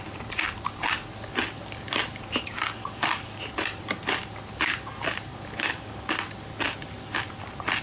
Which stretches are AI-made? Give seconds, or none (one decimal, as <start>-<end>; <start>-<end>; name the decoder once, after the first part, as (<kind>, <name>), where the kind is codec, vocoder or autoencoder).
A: 2.8-3.4 (codec, DAC); 5.3-6.1